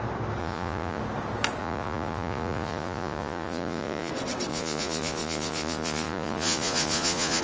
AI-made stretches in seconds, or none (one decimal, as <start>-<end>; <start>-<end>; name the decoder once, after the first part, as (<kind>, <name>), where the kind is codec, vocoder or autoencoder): 0.4-1.0 (vocoder, Vocos); 1.6-4.1; 4.5-7.4